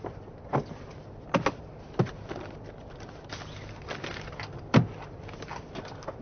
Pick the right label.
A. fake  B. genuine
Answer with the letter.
B